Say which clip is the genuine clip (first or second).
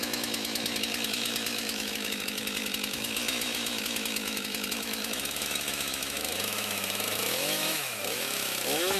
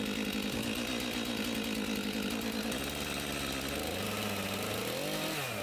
second